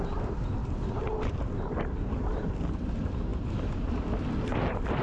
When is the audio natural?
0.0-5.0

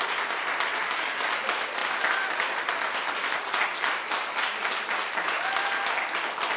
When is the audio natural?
0.0-0.8; 1.3-6.6

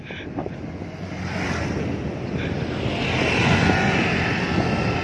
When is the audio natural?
0.0-0.4; 1.1-3.4; 4.0-5.0

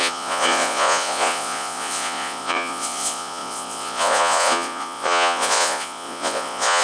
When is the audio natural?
none

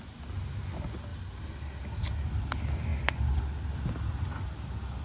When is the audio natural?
0.0-5.0

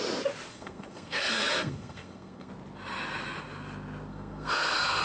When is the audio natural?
0.0-0.5; 2.5-4.1

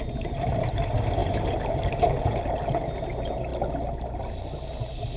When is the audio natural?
0.0-5.2

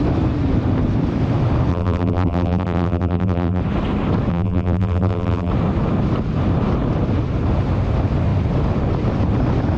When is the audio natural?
0.0-1.7; 3.6-4.3; 5.5-9.8